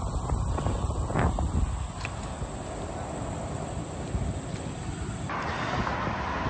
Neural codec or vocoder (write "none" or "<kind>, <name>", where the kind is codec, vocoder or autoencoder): none